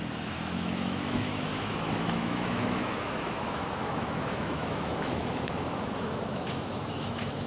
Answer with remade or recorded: remade